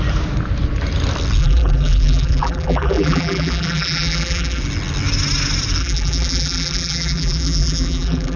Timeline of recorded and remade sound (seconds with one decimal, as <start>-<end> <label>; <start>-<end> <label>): 0.0-1.4 recorded; 1.4-4.6 remade; 4.6-5.8 recorded; 5.8-8.4 remade